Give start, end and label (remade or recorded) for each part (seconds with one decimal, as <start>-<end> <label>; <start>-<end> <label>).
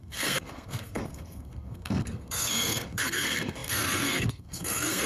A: 0.0-5.1 remade